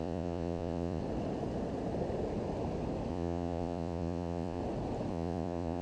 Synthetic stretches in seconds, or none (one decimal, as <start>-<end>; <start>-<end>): 0.0-1.0; 3.1-4.6; 5.1-5.8